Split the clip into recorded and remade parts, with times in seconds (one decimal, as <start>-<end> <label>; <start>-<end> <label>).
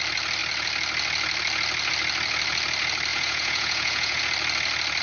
0.0-3.1 recorded; 3.1-4.2 remade; 4.2-5.0 recorded